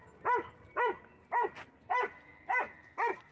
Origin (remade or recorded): recorded